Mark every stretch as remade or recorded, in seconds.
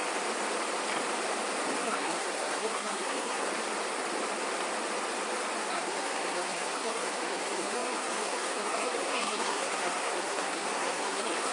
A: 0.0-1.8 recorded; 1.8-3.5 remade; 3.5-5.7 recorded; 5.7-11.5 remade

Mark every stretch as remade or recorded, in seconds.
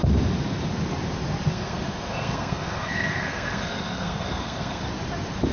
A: 0.0-1.5 recorded; 1.5-4.8 remade; 4.8-5.5 recorded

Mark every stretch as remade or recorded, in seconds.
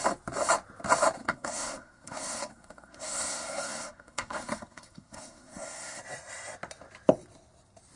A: 0.0-1.2 recorded; 1.2-6.0 remade; 6.0-8.0 recorded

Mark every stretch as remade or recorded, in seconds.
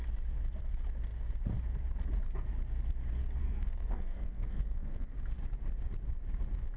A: 0.0-3.4 recorded; 3.4-5.1 remade; 5.1-6.8 recorded